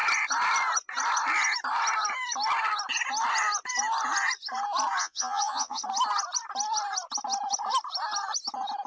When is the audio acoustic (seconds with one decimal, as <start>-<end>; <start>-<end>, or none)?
0.0-5.0; 5.8-8.9